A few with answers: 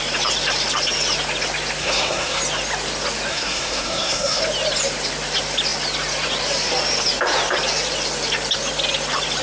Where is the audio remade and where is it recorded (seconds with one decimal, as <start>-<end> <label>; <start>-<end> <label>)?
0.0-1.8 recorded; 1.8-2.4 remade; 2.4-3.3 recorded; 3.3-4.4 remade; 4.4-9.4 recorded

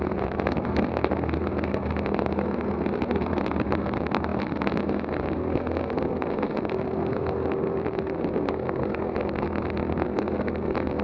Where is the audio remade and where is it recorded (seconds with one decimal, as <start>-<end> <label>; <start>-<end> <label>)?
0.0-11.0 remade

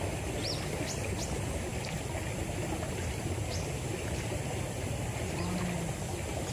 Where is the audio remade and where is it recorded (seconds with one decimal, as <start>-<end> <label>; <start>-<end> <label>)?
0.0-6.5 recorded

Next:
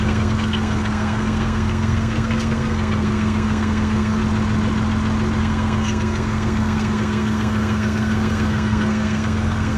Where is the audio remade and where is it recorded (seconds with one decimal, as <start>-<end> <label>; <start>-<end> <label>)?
0.0-4.2 remade; 4.2-5.4 recorded; 5.4-9.8 remade